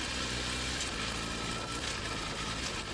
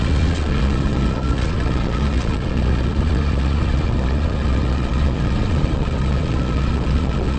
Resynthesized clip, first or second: second